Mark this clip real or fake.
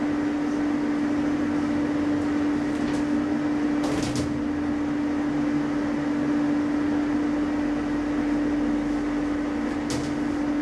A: real